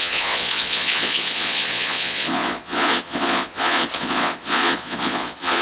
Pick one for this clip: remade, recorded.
remade